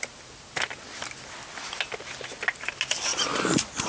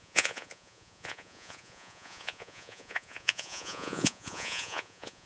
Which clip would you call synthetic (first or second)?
second